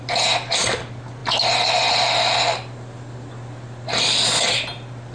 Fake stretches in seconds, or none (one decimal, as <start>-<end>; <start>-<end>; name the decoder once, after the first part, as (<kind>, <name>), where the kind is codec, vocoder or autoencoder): none